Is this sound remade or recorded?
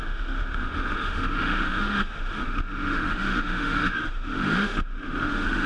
remade